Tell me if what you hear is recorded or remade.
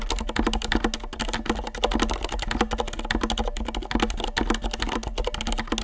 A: recorded